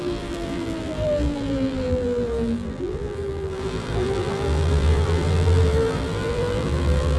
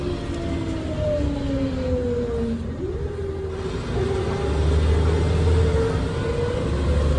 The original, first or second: second